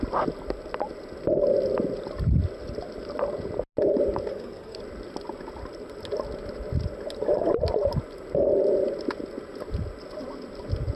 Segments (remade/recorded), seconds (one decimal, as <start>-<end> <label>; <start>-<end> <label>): 0.0-4.3 recorded; 4.3-4.8 remade; 4.8-11.0 recorded